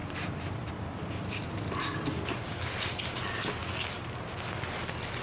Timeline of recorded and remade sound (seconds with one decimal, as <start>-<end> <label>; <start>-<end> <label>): 0.0-3.1 remade; 3.1-3.6 recorded; 3.6-4.2 remade; 4.2-5.2 recorded